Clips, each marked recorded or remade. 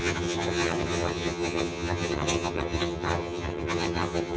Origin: remade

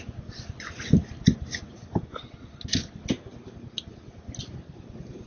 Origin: recorded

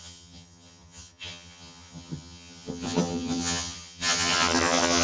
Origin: remade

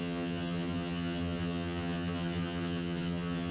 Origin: remade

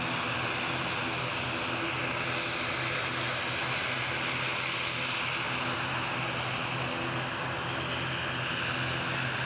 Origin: recorded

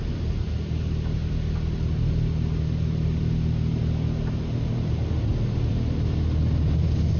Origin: recorded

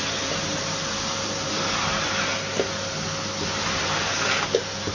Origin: recorded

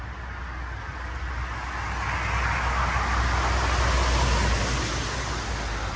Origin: recorded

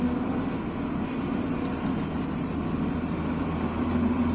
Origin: recorded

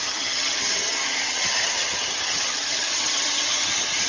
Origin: remade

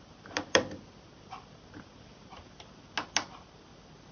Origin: recorded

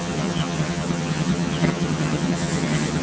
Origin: remade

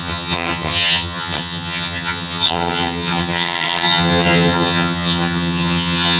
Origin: remade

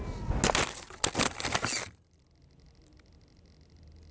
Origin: recorded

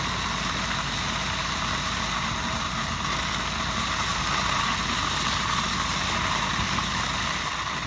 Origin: recorded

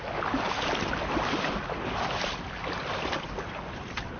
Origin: recorded